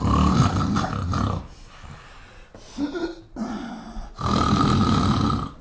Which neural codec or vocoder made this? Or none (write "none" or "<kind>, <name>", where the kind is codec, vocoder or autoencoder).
none